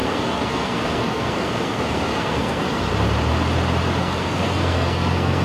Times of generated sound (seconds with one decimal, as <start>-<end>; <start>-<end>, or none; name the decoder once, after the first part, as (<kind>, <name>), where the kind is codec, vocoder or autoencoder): 0.0-2.9 (codec, SNAC); 4.0-5.4